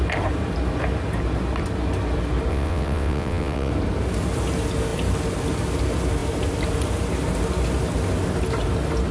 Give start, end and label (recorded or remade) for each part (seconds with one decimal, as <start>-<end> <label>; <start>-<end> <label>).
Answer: 0.0-2.5 recorded; 2.5-3.7 remade; 3.7-9.1 recorded